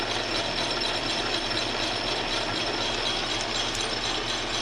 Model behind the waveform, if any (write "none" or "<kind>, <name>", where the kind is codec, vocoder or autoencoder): none